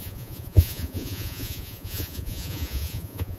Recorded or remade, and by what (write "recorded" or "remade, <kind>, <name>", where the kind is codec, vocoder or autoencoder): remade, vocoder, Vocos